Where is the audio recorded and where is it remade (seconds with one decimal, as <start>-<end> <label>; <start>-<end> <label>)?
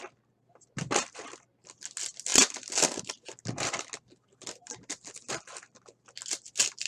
0.0-6.9 recorded